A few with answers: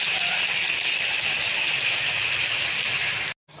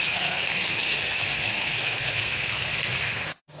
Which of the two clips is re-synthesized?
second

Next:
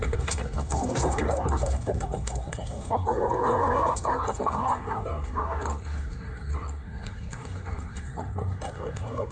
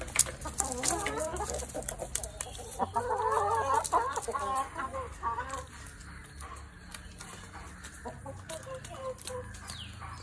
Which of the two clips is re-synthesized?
first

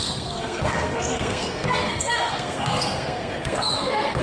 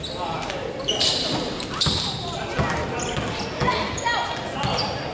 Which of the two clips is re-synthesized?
first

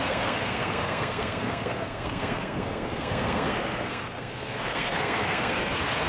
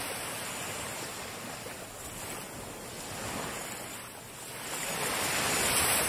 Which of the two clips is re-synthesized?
first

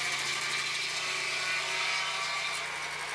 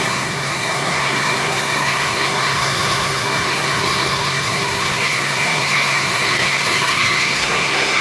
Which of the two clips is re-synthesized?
second